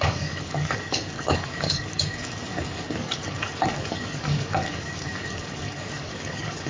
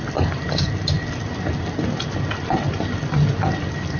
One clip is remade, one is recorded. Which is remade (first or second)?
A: first